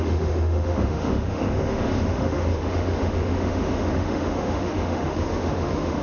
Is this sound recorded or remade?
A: remade